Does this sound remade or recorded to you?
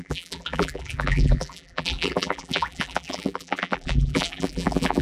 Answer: remade